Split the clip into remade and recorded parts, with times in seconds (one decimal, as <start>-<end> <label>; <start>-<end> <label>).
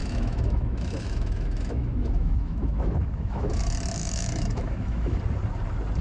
0.0-3.6 remade; 3.6-4.0 recorded; 4.0-5.2 remade; 5.2-6.0 recorded